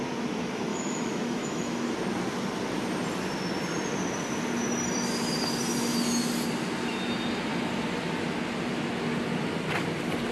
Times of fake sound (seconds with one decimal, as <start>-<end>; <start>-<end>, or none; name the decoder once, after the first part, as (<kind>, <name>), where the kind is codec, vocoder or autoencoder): 0.7-1.9 (autoencoder, DAC-VAE)